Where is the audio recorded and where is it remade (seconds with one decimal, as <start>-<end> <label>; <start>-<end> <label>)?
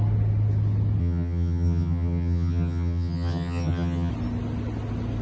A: 0.0-1.0 recorded; 1.0-4.1 remade; 4.1-5.2 recorded